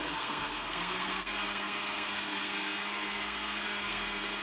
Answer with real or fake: fake